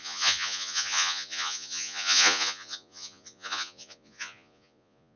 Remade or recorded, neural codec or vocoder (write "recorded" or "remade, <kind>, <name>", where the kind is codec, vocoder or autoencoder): remade, vocoder, Vocos